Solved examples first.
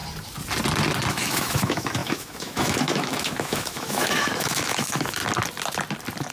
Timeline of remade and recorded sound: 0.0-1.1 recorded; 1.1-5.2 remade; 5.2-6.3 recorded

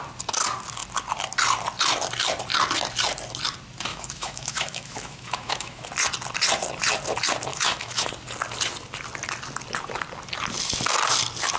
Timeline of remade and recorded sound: 0.0-3.9 recorded; 3.9-5.9 remade; 5.9-7.5 recorded; 7.5-8.1 remade; 8.1-11.6 recorded

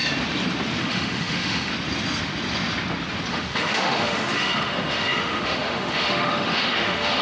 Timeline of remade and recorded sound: 0.0-0.8 recorded; 0.8-1.7 remade; 1.7-3.3 recorded; 3.3-7.2 remade

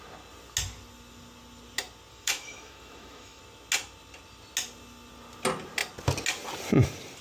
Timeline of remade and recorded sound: 0.0-2.1 recorded; 2.1-3.4 remade; 3.4-7.2 recorded

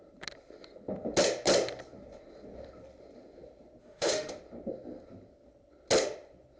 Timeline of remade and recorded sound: 0.0-3.8 recorded; 3.8-4.3 remade; 4.3-6.6 recorded

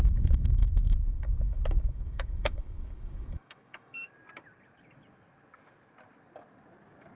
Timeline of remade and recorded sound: 0.0-4.1 remade; 4.1-7.2 recorded

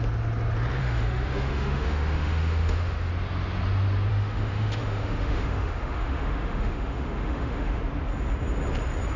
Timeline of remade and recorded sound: 0.0-0.8 recorded; 0.8-3.1 remade; 3.1-4.1 recorded; 4.1-7.8 remade; 7.8-9.2 recorded

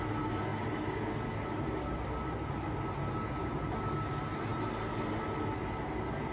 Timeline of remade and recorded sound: 0.0-6.3 recorded